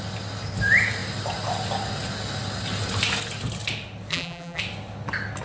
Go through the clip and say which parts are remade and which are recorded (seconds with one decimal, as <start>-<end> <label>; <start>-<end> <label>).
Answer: 0.0-4.1 recorded; 4.1-4.6 remade; 4.6-5.4 recorded

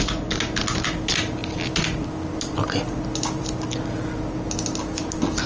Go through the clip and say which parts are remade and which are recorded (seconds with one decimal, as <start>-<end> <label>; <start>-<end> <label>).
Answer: 0.0-5.5 recorded

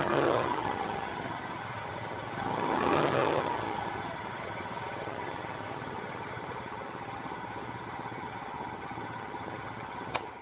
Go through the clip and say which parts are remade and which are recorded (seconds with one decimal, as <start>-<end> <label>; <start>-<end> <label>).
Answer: 0.0-10.4 remade

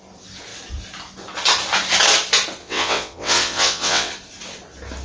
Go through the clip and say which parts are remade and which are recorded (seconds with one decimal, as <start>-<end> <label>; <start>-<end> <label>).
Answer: 0.0-2.6 recorded; 2.6-4.1 remade; 4.1-5.0 recorded

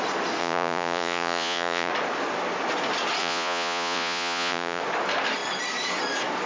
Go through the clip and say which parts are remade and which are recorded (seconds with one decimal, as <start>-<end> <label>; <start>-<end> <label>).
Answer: 0.0-0.4 recorded; 0.4-1.9 remade; 1.9-3.2 recorded; 3.2-4.8 remade; 4.8-6.5 recorded

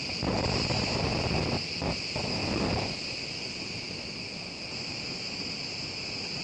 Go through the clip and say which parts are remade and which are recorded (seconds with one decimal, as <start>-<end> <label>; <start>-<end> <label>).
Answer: 0.0-6.4 recorded

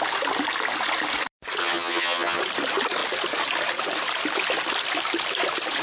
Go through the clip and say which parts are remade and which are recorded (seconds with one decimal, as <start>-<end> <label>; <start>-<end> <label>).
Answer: 0.0-1.6 recorded; 1.6-2.4 remade; 2.4-5.8 recorded